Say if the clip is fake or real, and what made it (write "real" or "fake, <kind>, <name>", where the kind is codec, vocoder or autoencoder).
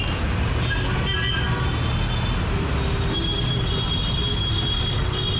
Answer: real